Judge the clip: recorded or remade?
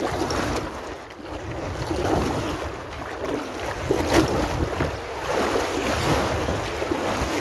recorded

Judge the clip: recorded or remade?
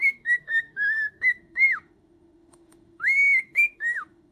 remade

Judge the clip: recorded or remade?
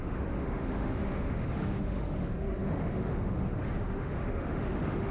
remade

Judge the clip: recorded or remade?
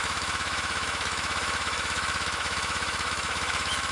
remade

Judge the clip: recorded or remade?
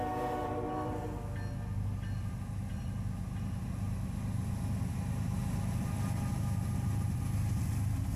recorded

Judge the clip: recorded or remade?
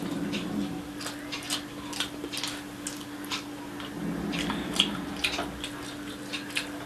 recorded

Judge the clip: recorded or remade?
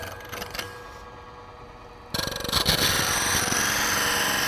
recorded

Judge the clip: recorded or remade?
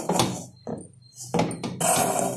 recorded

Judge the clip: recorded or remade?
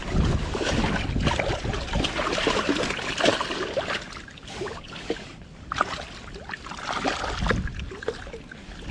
recorded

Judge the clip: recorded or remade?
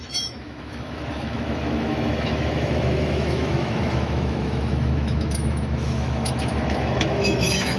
remade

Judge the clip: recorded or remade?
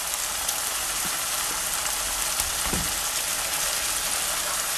recorded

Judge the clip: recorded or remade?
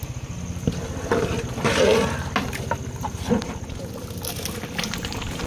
recorded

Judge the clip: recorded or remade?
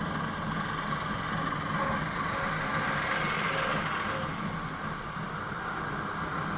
recorded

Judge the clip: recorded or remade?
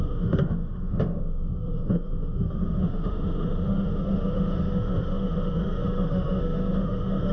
remade